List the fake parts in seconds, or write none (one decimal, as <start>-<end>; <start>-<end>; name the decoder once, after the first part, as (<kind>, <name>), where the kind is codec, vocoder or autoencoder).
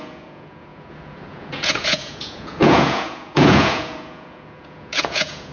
0.0-5.5 (vocoder, Vocos)